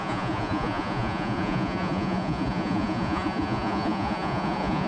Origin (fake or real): fake